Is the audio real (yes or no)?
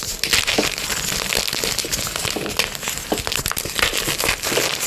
yes